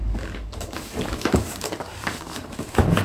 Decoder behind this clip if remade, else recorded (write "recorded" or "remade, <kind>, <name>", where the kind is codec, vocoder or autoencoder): remade, codec, DAC